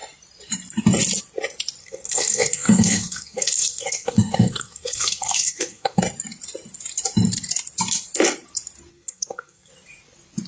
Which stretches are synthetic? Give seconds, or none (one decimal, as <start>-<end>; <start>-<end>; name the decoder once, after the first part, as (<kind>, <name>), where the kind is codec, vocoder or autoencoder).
1.8-6.0 (codec, SNAC); 8.9-9.7